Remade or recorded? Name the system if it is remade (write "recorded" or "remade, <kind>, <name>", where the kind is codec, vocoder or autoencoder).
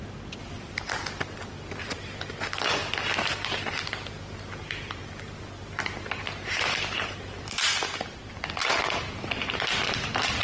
recorded